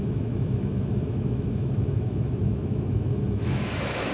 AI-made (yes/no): yes